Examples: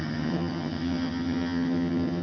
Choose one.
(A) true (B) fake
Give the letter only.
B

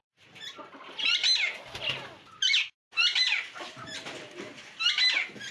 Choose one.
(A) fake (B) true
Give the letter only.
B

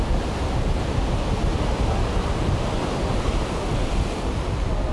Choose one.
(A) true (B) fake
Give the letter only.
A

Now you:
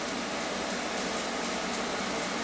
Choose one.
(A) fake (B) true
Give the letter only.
B